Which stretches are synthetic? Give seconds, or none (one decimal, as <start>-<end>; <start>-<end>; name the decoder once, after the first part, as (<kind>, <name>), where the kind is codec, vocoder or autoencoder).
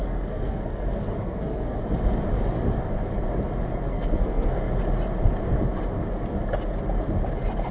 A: 0.0-1.8 (codec, SNAC); 3.9-4.7